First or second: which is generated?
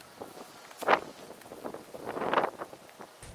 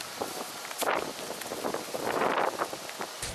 second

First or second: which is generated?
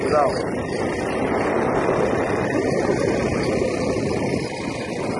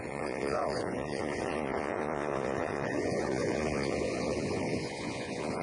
second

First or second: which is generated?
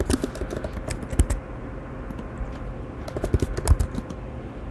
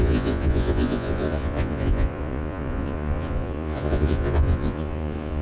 second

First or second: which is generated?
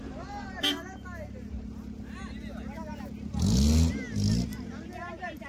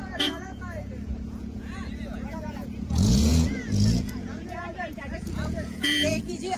second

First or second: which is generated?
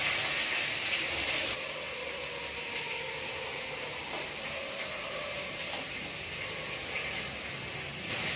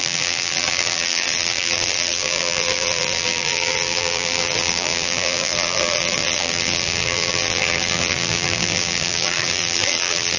second